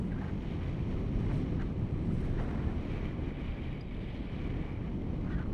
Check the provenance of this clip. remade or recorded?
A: recorded